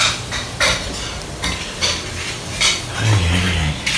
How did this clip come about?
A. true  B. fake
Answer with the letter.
A